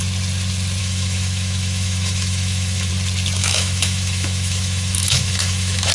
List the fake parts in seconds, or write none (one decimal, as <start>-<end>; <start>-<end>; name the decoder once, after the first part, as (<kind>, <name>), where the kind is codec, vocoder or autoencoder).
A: 0.8-2.9 (autoencoder, DAC-VAE); 3.4-5.9